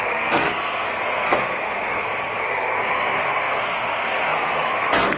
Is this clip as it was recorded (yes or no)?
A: no